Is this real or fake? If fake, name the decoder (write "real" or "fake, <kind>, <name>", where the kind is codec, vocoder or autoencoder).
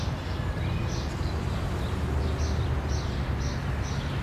real